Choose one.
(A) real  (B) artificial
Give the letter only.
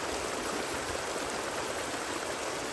A